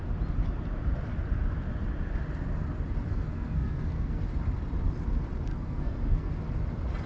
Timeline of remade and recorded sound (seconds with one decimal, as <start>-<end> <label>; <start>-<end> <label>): 0.0-3.1 recorded; 3.1-4.2 remade; 4.2-5.5 recorded; 5.5-6.3 remade; 6.3-7.1 recorded